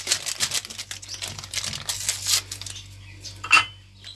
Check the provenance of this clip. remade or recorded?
recorded